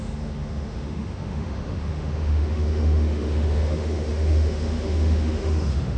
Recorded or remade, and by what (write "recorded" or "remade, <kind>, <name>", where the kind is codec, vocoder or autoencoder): remade, autoencoder, DAC-VAE